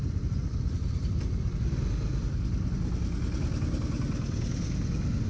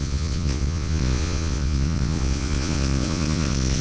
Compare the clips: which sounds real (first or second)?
first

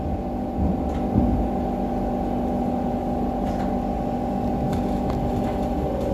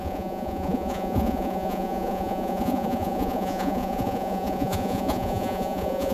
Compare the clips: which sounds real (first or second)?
first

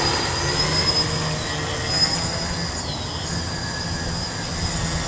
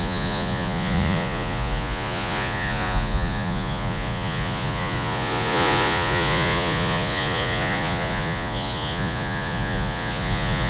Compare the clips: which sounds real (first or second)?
first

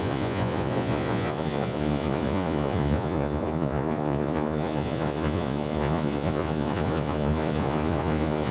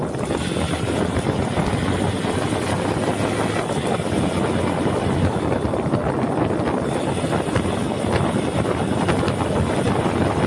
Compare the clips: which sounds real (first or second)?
second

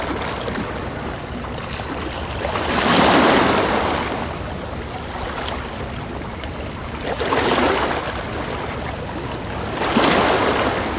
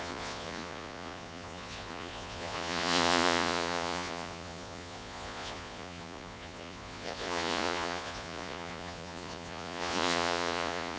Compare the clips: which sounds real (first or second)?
first